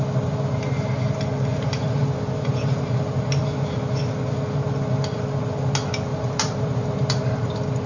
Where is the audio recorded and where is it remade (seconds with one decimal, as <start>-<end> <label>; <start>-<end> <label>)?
0.0-1.5 recorded; 1.5-3.4 remade; 3.4-6.1 recorded; 6.1-7.5 remade; 7.5-7.9 recorded